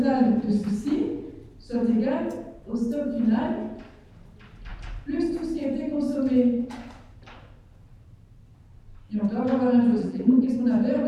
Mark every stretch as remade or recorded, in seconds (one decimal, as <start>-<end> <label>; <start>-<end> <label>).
0.0-10.0 recorded; 10.0-10.5 remade; 10.5-11.1 recorded